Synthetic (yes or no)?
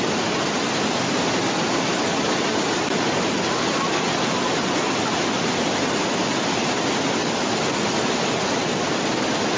no